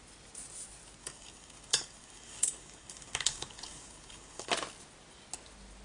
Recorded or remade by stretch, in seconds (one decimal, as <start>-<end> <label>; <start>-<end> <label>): 0.0-1.0 recorded; 1.0-4.5 remade; 4.5-5.8 recorded

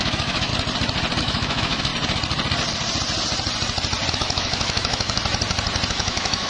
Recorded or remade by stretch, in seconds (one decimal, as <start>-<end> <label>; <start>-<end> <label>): 0.0-0.5 remade; 0.5-1.2 recorded; 1.2-1.9 remade; 1.9-4.1 recorded; 4.1-5.2 remade; 5.2-5.9 recorded; 5.9-6.5 remade

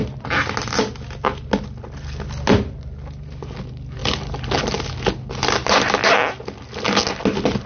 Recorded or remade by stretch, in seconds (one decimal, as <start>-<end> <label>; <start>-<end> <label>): 0.0-7.7 recorded

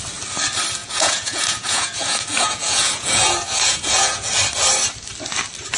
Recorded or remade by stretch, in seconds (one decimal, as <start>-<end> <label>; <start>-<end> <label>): 0.0-0.8 recorded; 0.8-4.3 remade; 4.3-5.8 recorded

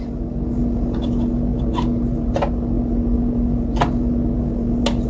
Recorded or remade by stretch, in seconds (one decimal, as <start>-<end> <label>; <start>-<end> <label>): 0.0-5.1 recorded

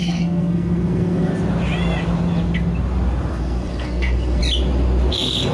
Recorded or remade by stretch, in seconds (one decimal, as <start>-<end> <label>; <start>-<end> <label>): 0.0-1.3 remade; 1.3-3.3 recorded; 3.3-4.4 remade; 4.4-5.1 recorded; 5.1-5.5 remade

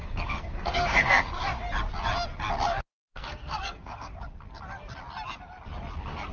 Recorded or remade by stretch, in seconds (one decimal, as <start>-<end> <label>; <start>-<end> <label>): 0.0-1.6 remade; 1.6-2.7 recorded; 2.7-4.1 remade; 4.1-6.3 recorded

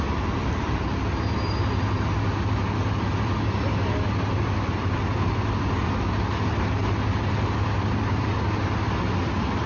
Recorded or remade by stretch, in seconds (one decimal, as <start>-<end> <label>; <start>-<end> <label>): 0.0-0.5 recorded; 0.5-1.1 remade; 1.1-9.7 recorded